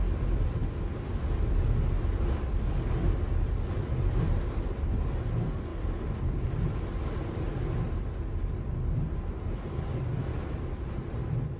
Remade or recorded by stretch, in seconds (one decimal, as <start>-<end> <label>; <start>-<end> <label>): 0.0-11.6 recorded